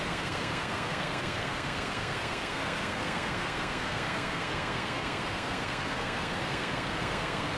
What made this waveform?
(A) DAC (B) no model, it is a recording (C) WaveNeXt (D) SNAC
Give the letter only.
D